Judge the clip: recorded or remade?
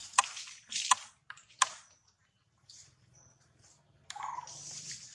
recorded